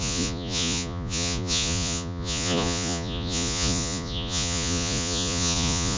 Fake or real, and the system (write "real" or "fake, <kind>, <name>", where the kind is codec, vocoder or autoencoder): fake, vocoder, Vocos